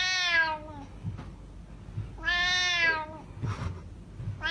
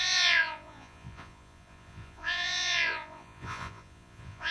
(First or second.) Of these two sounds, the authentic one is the first